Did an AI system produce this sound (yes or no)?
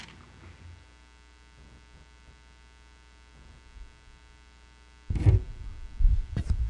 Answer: no